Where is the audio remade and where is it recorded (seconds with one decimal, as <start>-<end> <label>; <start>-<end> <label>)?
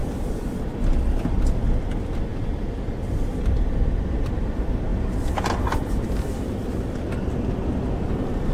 0.0-8.5 recorded